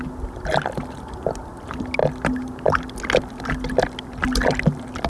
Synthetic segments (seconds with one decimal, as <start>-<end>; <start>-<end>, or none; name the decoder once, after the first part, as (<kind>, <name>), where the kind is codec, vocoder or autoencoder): none